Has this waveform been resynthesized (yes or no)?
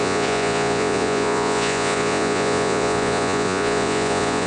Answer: yes